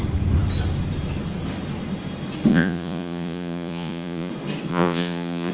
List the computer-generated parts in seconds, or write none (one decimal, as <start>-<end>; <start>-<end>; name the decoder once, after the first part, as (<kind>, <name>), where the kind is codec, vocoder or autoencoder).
2.5-4.3 (vocoder, Vocos); 4.7-5.5